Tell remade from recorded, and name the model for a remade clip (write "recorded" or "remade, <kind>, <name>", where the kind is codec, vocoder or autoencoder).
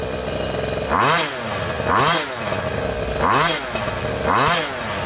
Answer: recorded